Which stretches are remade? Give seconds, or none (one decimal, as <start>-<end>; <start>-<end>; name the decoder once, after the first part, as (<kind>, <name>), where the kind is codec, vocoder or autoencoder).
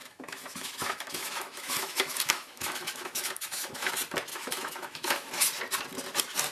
0.0-3.9 (autoencoder, DAC-VAE); 4.3-5.3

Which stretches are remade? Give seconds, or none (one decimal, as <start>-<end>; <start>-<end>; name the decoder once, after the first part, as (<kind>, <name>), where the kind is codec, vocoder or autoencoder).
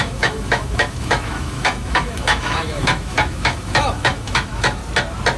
0.0-4.8 (autoencoder, DAC-VAE)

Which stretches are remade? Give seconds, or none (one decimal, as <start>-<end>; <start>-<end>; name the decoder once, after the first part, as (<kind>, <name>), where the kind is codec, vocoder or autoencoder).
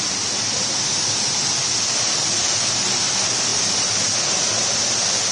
none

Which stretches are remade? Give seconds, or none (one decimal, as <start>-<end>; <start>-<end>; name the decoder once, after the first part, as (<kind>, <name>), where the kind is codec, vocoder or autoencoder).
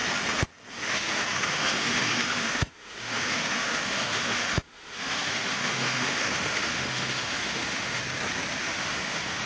0.7-8.0 (autoencoder, DAC-VAE); 8.6-9.5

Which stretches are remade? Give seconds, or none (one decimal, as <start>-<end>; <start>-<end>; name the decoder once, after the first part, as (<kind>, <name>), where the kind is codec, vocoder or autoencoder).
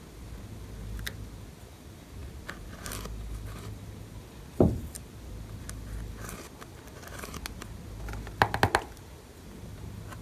none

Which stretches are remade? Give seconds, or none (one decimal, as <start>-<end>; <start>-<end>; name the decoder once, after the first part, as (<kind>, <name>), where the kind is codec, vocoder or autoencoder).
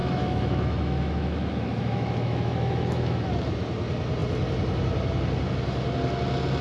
0.0-3.3 (autoencoder, DAC-VAE)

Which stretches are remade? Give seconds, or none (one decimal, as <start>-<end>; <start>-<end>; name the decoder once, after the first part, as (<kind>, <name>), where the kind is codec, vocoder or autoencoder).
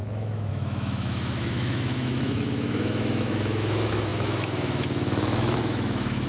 0.0-6.3 (autoencoder, DAC-VAE)